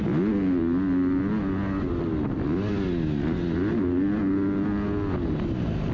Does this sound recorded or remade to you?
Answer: recorded